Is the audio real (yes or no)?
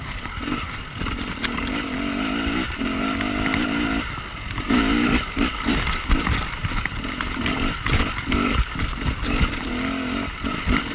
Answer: yes